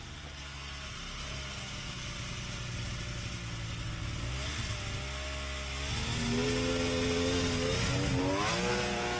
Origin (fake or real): real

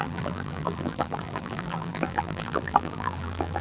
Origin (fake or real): fake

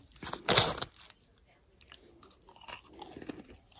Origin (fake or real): real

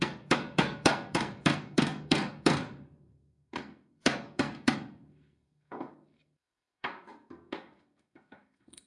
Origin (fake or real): fake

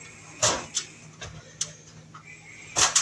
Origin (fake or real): real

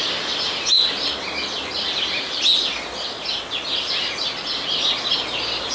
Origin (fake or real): real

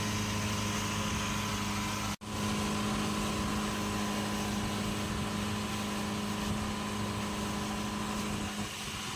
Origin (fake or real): real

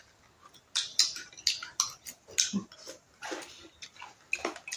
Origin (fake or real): real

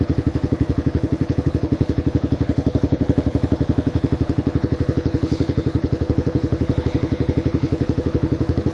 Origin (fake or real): fake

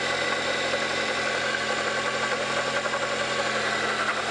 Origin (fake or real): real